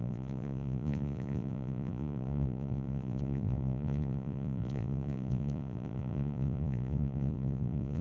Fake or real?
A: fake